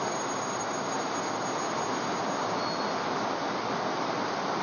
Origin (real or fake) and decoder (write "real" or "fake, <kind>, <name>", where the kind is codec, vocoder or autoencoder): real